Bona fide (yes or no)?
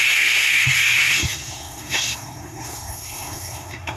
no